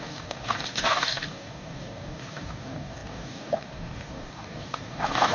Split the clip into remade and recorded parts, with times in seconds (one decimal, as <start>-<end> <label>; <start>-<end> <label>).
0.0-5.3 remade